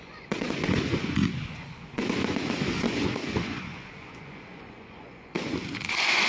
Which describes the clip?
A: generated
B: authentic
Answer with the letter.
A